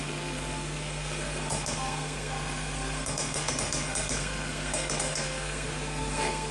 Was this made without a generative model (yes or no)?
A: no